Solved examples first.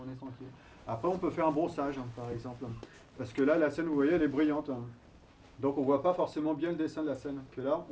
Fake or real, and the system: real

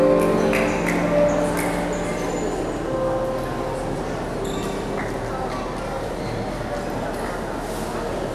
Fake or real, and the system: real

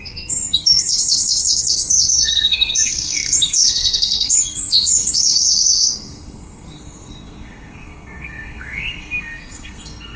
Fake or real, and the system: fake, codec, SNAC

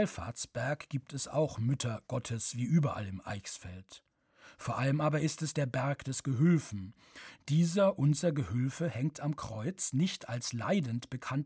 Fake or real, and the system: real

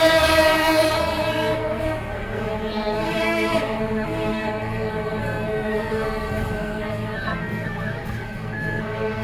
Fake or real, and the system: fake, codec, SNAC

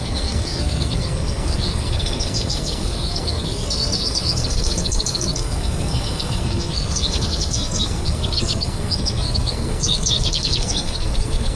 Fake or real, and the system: fake, codec, SNAC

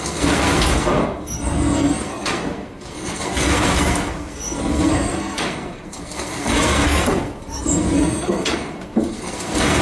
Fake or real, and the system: fake, codec, SNAC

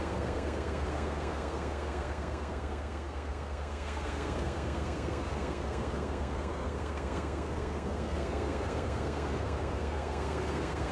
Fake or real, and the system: fake, codec, SNAC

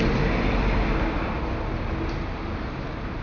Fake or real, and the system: real